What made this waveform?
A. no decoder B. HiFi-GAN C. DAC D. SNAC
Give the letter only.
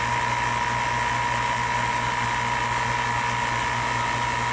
A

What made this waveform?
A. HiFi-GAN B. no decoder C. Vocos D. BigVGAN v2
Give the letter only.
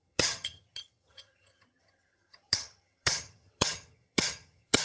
A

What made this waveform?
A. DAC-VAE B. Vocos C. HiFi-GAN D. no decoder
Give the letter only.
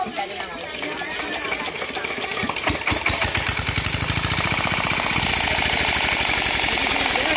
D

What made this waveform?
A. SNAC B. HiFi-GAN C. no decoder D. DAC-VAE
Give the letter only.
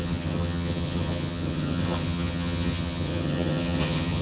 B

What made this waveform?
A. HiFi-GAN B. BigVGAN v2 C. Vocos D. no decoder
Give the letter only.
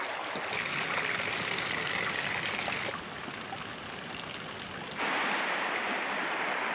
D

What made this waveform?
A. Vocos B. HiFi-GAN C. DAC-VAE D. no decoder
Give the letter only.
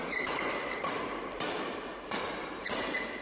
D